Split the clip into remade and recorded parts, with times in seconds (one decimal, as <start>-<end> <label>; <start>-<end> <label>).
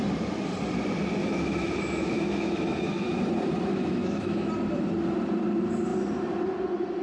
0.0-1.2 recorded; 1.2-3.2 remade; 3.2-3.7 recorded; 3.7-4.5 remade; 4.5-7.0 recorded